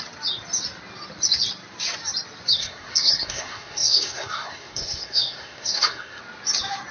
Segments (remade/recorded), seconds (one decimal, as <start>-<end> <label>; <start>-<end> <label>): 0.0-2.6 recorded; 2.6-6.2 remade; 6.2-6.9 recorded